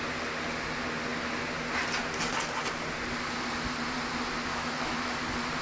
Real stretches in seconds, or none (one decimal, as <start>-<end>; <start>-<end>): 0.0-4.5; 5.1-5.6